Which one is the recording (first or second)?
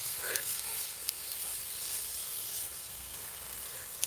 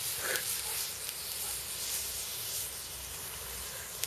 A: second